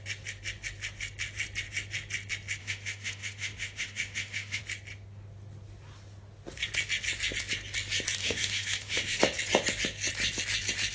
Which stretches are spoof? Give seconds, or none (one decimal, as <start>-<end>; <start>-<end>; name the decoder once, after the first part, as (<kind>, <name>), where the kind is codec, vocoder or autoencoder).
2.6-4.6 (autoencoder, DAC-VAE); 8.2-9.2

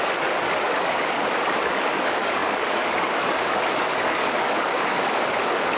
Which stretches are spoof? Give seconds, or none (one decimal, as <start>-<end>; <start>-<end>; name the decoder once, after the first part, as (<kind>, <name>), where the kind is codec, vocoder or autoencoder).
0.0-5.8 (codec, DAC)

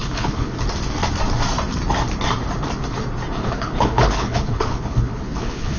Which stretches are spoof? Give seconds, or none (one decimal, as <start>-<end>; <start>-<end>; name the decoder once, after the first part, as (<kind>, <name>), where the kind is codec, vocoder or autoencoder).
0.0-0.6 (codec, HILCodec); 3.4-5.8

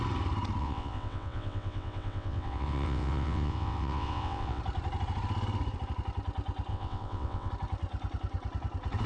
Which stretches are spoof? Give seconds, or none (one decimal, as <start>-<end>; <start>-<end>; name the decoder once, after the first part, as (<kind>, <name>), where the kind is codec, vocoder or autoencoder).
0.6-4.6 (vocoder, WaveNeXt); 6.7-7.5

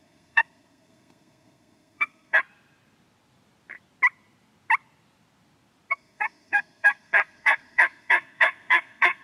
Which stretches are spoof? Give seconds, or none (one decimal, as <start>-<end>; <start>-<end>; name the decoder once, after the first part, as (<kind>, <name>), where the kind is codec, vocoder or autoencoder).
0.0-2.4 (codec, SNAC); 5.9-9.2